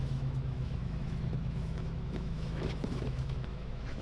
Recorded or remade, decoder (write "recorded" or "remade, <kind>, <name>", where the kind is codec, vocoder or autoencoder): remade, autoencoder, DAC-VAE